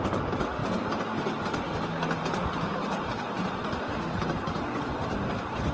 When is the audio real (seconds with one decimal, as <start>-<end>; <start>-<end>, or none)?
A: 0.0-5.7